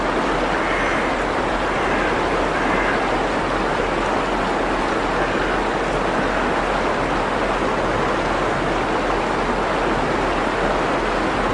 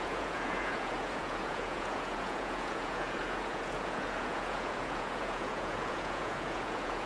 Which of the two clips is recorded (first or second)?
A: first